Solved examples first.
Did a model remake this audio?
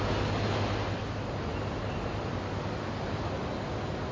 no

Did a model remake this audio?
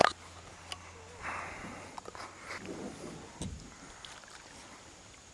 no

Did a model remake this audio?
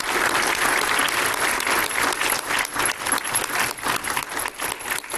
no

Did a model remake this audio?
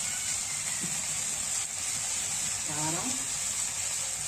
no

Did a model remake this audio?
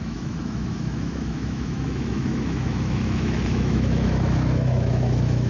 yes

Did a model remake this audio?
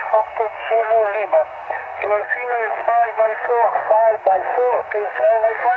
yes